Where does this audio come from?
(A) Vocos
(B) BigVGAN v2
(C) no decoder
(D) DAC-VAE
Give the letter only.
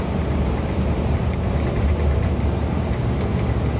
C